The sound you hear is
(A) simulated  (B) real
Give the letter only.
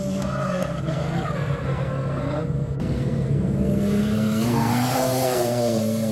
A